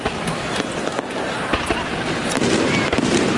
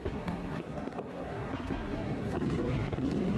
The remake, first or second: second